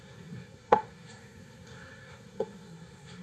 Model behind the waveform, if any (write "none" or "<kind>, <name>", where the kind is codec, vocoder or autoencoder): codec, SNAC